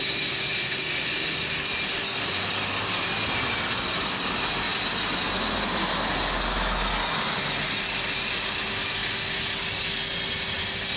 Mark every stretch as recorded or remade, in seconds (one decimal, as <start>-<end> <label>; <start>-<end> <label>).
0.0-11.0 recorded

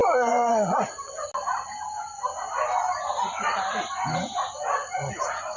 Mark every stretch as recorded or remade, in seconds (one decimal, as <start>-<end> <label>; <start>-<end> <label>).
0.0-0.8 remade; 0.8-5.6 recorded

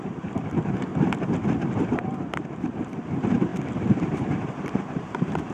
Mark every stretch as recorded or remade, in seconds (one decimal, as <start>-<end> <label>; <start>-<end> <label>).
0.0-0.9 remade; 0.9-1.8 recorded; 1.8-3.5 remade; 3.5-4.1 recorded; 4.1-5.5 remade

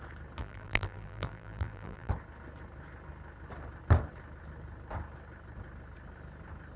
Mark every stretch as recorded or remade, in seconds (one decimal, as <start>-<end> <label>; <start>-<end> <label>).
0.0-0.4 recorded; 0.4-2.1 remade; 2.1-6.8 recorded

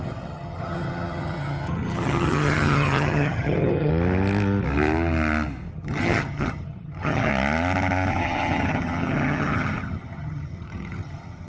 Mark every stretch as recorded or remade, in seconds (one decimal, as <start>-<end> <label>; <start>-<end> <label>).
0.0-3.9 remade; 3.9-5.7 recorded; 5.7-7.3 remade; 7.3-8.1 recorded; 8.1-11.5 remade

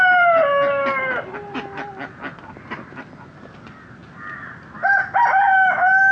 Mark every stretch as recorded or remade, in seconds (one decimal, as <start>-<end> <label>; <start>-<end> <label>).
0.0-6.1 recorded

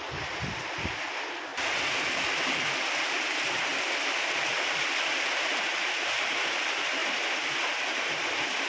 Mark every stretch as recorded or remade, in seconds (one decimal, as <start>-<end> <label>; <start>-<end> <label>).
0.0-7.0 remade; 7.0-7.6 recorded; 7.6-8.7 remade

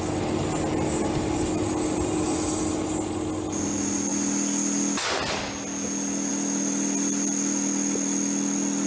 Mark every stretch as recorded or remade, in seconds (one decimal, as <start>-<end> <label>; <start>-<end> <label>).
0.0-8.9 recorded